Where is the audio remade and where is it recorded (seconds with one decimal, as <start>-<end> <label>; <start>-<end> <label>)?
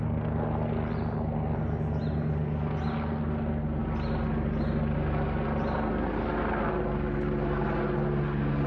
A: 0.0-8.7 recorded